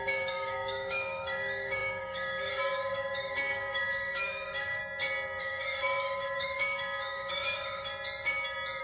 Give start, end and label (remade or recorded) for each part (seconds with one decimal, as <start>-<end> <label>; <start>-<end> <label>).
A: 0.0-4.8 remade; 4.8-5.4 recorded; 5.4-7.9 remade; 7.9-8.8 recorded